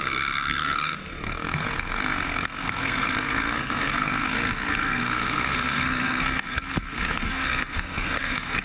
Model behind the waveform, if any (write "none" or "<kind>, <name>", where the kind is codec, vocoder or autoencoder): codec, SNAC